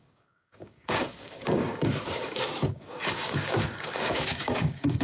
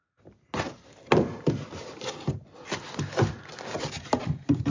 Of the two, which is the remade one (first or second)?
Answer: first